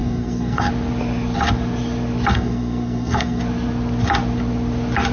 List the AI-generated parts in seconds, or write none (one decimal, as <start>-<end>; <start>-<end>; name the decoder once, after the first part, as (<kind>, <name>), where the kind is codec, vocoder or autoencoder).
0.0-0.7 (codec, SNAC); 2.3-3.4